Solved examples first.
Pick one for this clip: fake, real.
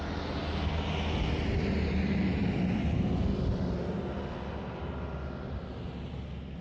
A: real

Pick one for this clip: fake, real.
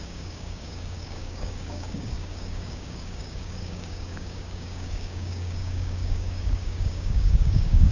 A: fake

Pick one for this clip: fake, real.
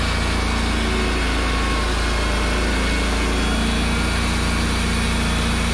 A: real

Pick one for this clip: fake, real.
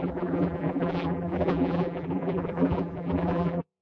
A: fake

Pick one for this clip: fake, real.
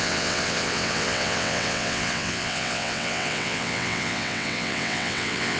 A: fake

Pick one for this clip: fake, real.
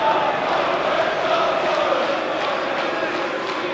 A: real